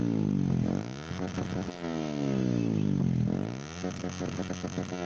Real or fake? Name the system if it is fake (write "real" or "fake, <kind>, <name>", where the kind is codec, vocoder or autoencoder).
real